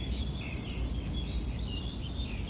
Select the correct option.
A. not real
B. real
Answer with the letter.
A